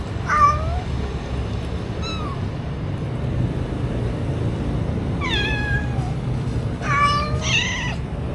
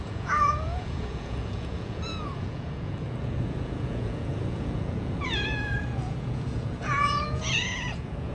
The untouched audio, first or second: first